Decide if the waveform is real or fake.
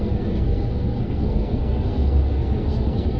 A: fake